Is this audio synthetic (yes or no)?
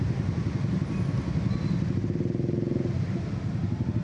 no